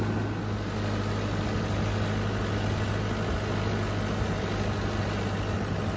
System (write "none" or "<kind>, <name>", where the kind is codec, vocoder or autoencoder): none